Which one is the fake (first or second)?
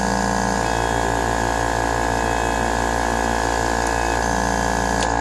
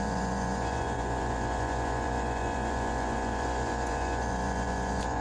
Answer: second